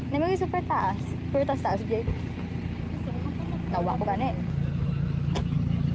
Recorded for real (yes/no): yes